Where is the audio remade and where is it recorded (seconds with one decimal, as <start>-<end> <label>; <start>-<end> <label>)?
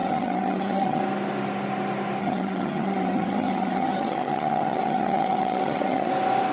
0.0-1.0 remade; 1.0-2.2 recorded; 2.2-6.1 remade; 6.1-6.5 recorded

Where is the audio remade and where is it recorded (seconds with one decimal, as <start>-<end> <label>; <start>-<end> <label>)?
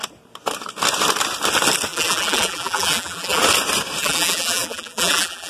0.0-1.9 recorded; 1.9-3.4 remade; 3.4-4.0 recorded; 4.0-5.5 remade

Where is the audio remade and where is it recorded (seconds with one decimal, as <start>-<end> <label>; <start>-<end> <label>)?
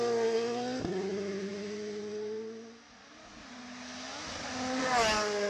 0.0-5.5 recorded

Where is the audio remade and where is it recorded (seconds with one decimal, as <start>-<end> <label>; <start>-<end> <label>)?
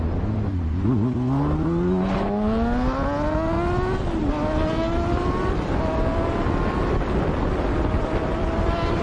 0.0-9.0 recorded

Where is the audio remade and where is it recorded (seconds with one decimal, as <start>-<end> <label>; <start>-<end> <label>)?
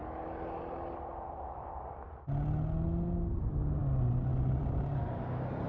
0.0-5.7 recorded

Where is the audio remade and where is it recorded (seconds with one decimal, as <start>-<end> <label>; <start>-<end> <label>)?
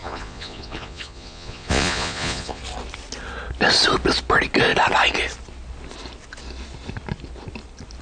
0.0-2.6 remade; 2.6-8.0 recorded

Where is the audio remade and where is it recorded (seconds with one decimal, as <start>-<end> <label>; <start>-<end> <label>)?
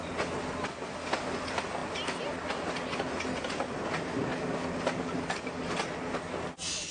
0.0-6.9 recorded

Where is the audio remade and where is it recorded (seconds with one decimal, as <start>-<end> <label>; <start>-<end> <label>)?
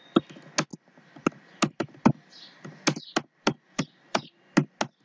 0.0-5.0 recorded